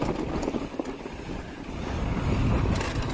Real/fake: real